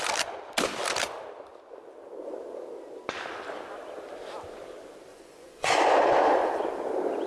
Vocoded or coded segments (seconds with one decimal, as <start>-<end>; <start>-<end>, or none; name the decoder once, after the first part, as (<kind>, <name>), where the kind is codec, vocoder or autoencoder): 5.1-6.6 (vocoder, Vocos)